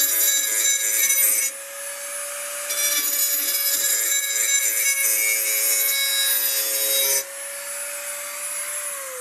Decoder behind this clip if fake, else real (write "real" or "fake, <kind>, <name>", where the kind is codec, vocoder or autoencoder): real